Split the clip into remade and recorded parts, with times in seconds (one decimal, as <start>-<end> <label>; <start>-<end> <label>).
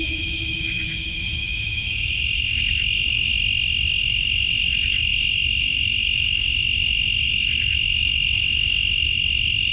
0.0-3.3 remade; 3.3-4.0 recorded; 4.0-9.7 remade